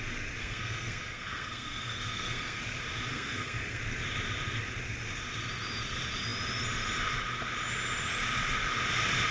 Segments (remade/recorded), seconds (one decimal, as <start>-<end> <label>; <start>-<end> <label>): 0.0-0.4 recorded; 0.4-2.6 remade; 2.6-3.1 recorded; 3.1-3.8 remade; 3.8-9.3 recorded